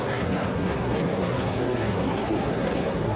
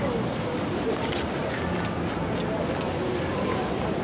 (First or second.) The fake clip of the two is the first